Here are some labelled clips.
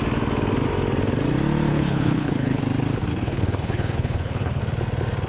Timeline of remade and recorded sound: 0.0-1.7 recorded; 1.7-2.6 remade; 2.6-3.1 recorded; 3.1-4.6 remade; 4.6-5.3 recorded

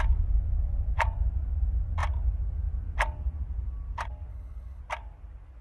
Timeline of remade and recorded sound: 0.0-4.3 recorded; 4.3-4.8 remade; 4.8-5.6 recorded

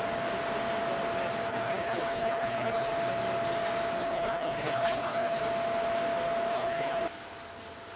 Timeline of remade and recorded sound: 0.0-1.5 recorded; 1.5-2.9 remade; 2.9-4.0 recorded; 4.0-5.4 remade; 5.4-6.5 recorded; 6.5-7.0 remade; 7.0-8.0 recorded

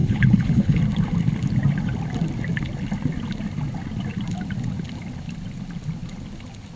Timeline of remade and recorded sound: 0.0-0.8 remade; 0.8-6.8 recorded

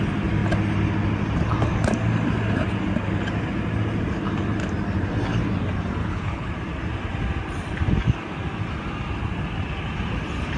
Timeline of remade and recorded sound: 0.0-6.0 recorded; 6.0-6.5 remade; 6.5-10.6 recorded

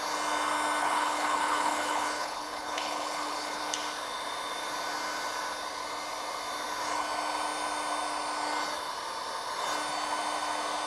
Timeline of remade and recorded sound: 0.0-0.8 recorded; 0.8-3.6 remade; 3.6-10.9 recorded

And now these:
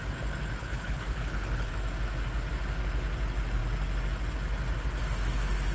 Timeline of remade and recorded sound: 0.0-0.6 recorded; 0.6-1.7 remade; 1.7-5.7 recorded